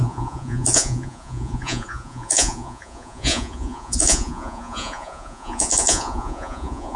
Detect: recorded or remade remade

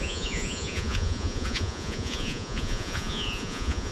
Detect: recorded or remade remade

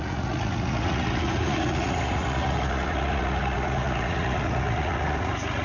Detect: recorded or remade remade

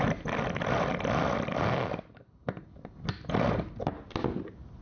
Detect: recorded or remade recorded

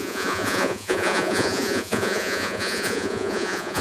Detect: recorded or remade remade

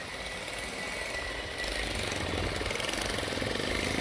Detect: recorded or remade recorded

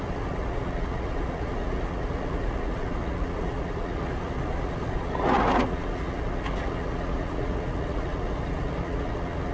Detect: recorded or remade remade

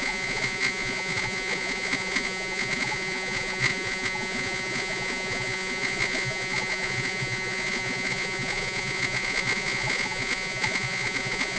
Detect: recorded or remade remade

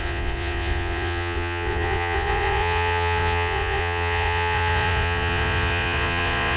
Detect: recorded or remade remade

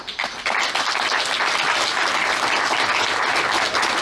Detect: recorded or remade recorded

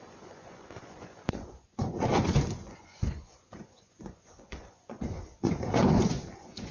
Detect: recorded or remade remade